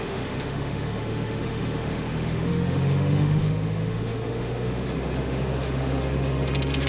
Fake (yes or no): yes